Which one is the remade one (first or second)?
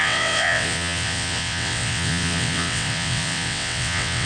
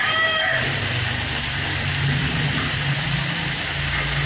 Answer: first